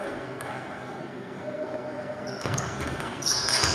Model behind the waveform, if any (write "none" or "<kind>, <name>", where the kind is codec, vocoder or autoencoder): codec, SNAC